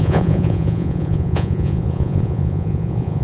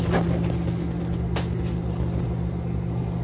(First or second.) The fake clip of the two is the first